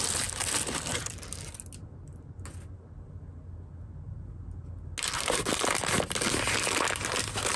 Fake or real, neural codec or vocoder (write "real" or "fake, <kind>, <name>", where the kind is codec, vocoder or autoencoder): real